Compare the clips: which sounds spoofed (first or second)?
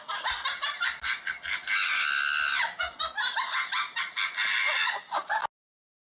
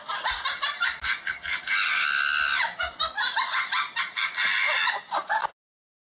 second